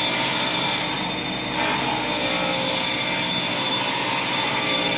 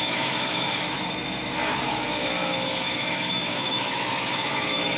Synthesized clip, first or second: second